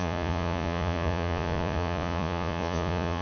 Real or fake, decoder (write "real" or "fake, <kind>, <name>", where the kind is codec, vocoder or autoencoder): fake, vocoder, Vocos